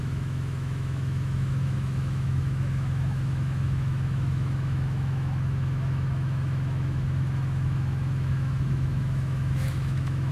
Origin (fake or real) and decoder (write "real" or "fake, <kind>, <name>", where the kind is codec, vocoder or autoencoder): fake, autoencoder, DAC-VAE